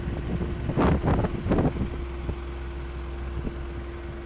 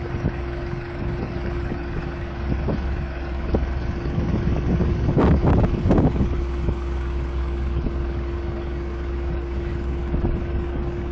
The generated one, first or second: second